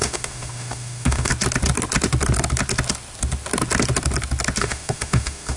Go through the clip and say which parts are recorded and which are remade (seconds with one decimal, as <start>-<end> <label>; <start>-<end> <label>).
0.0-1.3 remade; 1.3-4.6 recorded; 4.6-5.6 remade